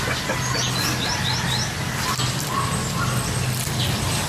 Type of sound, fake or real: real